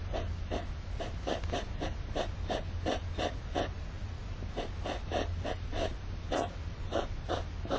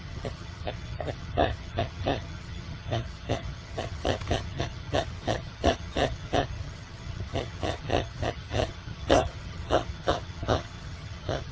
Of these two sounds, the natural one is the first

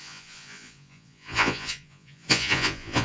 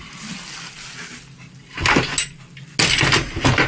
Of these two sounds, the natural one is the second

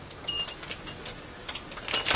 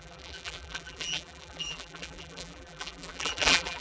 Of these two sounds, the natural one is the first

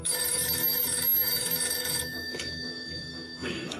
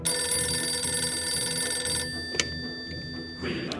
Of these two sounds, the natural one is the second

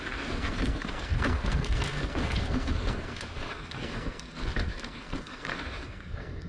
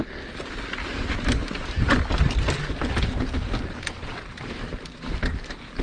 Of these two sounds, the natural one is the second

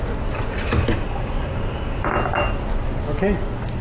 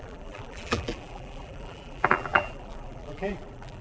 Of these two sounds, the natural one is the first